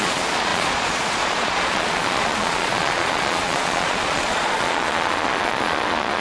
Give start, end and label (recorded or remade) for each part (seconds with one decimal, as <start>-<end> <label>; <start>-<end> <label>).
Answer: 0.0-6.2 remade